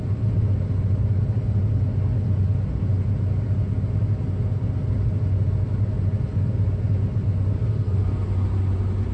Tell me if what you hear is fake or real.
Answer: real